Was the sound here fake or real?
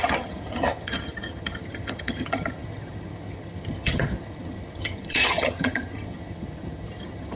fake